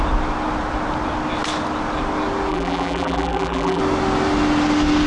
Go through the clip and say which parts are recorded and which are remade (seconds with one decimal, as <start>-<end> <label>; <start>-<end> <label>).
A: 0.0-2.5 recorded; 2.5-3.8 remade; 3.8-5.1 recorded